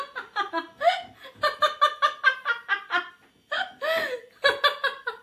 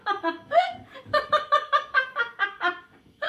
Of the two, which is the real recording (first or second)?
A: first